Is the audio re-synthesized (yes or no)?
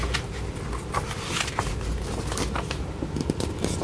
no